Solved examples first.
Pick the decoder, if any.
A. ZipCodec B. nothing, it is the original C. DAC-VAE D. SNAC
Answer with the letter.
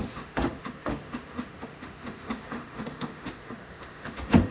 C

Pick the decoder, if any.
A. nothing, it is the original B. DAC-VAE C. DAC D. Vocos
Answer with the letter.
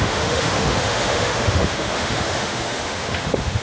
B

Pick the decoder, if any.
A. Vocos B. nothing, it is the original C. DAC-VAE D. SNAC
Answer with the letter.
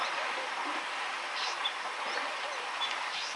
B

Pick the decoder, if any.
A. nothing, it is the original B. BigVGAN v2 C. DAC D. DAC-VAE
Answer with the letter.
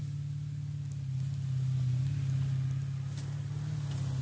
A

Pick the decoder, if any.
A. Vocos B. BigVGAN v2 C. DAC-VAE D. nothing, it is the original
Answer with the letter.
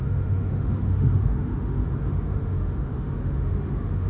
C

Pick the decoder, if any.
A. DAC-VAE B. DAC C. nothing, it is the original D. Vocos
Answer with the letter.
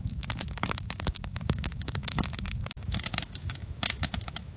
A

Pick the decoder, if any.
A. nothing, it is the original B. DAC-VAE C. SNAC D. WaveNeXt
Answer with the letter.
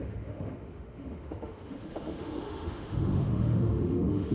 B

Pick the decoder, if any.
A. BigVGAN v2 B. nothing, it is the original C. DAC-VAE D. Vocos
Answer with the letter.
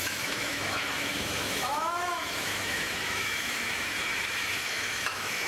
C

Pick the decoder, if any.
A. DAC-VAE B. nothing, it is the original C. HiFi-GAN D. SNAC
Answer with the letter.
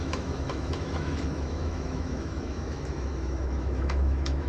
A